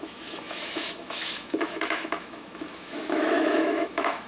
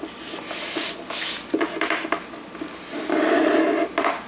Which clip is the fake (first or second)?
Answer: first